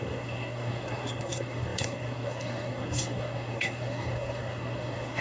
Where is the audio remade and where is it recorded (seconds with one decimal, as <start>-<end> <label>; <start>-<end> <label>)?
0.0-5.2 remade